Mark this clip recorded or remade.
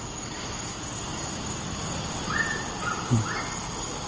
recorded